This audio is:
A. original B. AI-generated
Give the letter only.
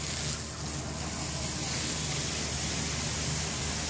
A